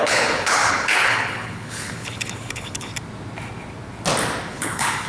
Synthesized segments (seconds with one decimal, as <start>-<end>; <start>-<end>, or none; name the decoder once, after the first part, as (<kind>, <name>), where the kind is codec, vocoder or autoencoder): 0.0-2.9 (codec, HILCodec); 4.5-5.1